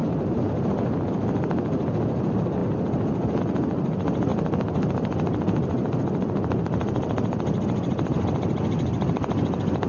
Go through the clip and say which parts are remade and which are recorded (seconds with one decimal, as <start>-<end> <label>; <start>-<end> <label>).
0.0-1.1 remade; 1.1-4.3 recorded; 4.3-9.9 remade